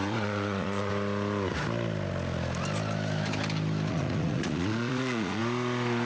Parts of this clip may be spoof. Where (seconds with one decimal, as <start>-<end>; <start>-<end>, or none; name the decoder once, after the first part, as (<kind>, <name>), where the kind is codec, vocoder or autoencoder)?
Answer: 0.0-0.9 (vocoder, Vocos); 3.9-5.4